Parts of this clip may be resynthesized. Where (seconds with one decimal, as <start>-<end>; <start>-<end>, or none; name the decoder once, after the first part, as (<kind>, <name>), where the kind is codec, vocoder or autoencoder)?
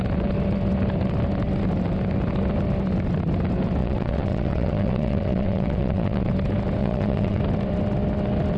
3.8-6.3 (vocoder, WaveNeXt); 6.8-7.4